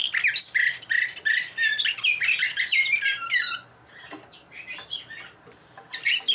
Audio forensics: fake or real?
real